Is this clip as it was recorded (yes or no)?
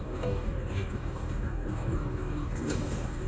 no